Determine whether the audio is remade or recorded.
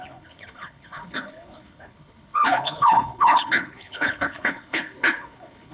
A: remade